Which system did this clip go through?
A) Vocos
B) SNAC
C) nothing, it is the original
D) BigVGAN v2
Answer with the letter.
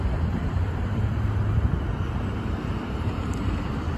D